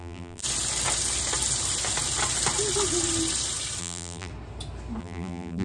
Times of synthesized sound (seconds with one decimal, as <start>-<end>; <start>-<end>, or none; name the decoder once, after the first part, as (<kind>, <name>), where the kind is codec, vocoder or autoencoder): 0.0-0.4 (vocoder, BigVGAN v2); 3.8-4.3; 5.0-5.6